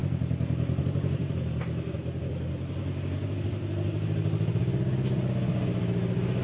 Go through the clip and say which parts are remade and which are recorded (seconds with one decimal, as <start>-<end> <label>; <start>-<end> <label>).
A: 0.0-6.4 recorded

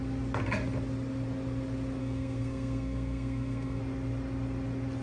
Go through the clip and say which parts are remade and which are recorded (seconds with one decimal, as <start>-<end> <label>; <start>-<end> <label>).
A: 0.0-2.0 recorded; 2.0-3.8 remade; 3.8-5.0 recorded

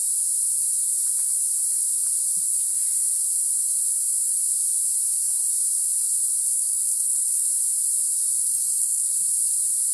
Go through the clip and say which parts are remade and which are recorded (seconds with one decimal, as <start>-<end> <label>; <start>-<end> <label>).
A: 0.0-6.5 recorded; 6.5-7.5 remade; 7.5-8.4 recorded; 8.4-9.1 remade; 9.1-9.9 recorded

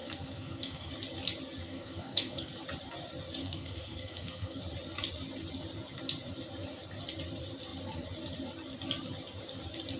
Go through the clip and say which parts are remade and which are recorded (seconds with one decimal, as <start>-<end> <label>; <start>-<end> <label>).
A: 0.0-0.9 remade; 0.9-1.6 recorded; 1.6-2.5 remade; 2.5-3.4 recorded; 3.4-4.6 remade; 4.6-10.0 recorded

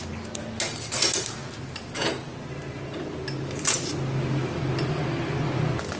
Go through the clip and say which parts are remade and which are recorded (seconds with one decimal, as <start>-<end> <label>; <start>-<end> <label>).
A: 0.0-6.0 recorded

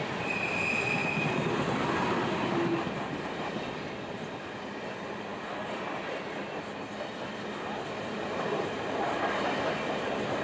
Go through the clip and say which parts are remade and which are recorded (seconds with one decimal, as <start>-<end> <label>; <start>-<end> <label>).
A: 0.0-1.0 remade; 1.0-2.4 recorded; 2.4-5.3 remade; 5.3-6.0 recorded; 6.0-10.4 remade

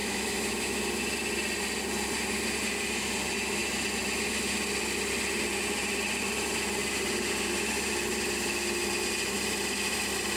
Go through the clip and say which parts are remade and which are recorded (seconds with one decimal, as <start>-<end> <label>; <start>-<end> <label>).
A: 0.0-0.8 remade; 0.8-10.4 recorded